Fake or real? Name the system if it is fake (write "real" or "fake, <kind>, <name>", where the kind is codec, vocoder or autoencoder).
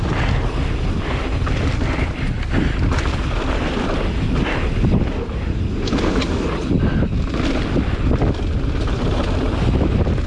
real